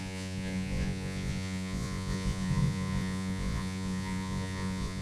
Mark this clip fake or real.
fake